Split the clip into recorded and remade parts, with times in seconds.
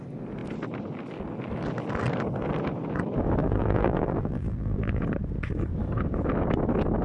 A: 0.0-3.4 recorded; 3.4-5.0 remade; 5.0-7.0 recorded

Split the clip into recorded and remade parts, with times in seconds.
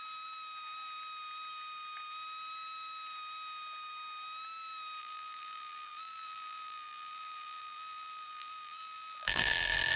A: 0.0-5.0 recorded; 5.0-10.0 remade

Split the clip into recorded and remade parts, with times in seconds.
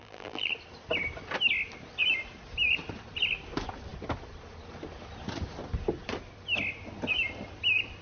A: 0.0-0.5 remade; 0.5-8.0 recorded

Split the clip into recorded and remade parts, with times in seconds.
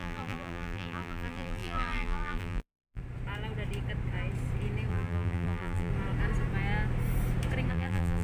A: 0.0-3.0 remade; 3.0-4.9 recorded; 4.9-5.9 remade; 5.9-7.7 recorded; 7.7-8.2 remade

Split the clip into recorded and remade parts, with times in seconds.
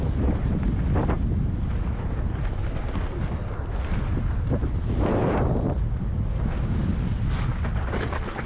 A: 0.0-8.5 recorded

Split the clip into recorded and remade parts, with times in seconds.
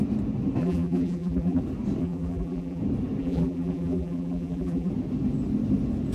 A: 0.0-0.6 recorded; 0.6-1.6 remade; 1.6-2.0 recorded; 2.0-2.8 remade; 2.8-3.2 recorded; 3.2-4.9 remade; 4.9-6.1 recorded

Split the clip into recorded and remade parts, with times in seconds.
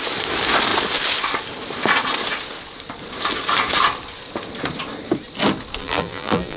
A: 0.0-5.8 recorded; 5.8-6.6 remade